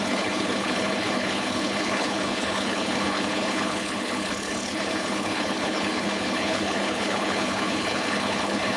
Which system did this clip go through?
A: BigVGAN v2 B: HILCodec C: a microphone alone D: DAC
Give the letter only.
B